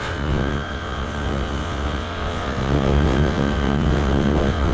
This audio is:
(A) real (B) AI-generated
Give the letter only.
B